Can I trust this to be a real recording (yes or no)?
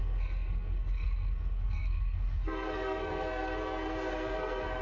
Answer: no